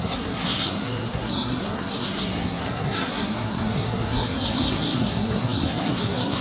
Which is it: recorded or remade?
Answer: remade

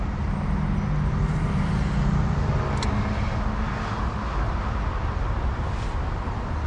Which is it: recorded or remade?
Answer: recorded